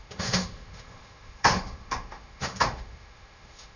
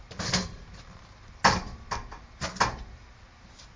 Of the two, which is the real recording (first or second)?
second